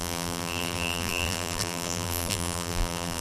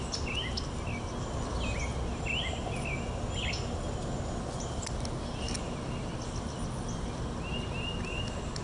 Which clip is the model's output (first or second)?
first